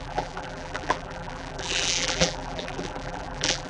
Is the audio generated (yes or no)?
yes